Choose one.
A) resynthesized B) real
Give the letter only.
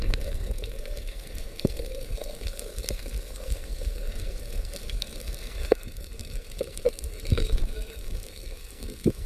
A